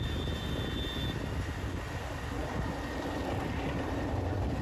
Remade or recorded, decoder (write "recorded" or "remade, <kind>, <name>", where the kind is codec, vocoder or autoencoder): recorded